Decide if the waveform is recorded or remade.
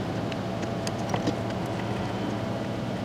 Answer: recorded